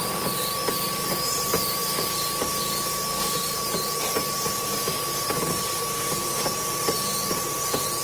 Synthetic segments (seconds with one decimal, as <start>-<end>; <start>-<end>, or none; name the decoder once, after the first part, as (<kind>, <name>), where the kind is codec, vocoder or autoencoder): 3.1-3.6 (codec, SNAC)

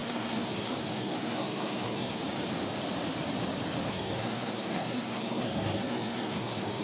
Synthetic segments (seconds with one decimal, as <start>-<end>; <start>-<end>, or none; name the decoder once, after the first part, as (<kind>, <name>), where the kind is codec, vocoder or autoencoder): 0.0-2.2 (codec, SNAC); 3.9-6.8

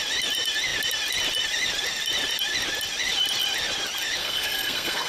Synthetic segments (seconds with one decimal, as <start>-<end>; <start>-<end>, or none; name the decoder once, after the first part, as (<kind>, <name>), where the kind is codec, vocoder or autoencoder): 4.2-5.1 (codec, SNAC)

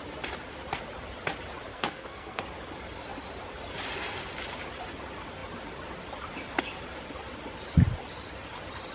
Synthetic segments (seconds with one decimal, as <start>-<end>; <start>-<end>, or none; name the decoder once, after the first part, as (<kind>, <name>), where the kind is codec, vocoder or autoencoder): 1.7-2.4 (codec, SNAC)

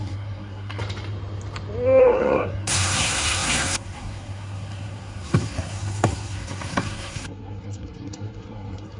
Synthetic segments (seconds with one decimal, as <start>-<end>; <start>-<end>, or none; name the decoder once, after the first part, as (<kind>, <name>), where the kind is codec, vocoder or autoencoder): 0.0-0.8 (codec, SNAC); 2.0-9.0